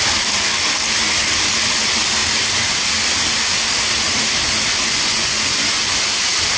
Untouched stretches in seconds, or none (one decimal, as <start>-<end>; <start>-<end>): 0.0-4.7; 5.9-6.6